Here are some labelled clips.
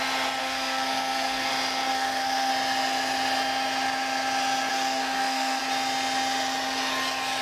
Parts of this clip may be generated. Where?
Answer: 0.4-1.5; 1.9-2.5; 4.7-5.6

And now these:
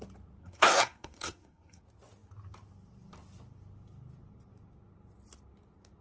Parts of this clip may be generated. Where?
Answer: 0.4-1.8

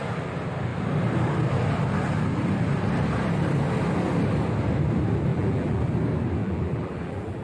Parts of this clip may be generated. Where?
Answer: 5.3-5.8; 6.4-7.4

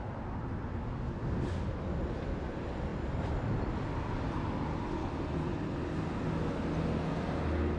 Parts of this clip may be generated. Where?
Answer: 2.9-4.2